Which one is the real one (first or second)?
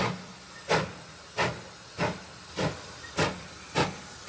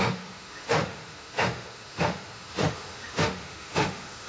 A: first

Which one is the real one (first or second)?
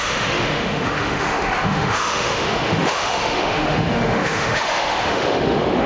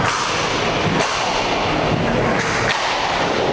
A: second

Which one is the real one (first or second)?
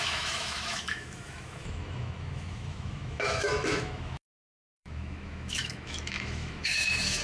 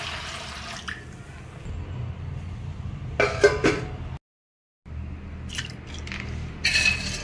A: second